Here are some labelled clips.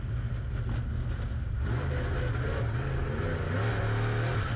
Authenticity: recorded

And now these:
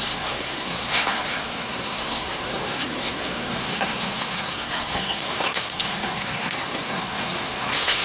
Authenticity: remade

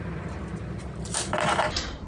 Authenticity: recorded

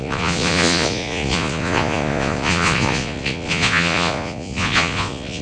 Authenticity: remade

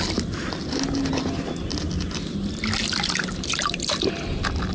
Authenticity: recorded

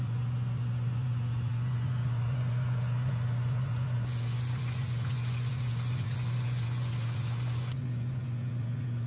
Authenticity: remade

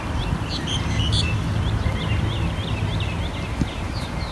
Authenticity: recorded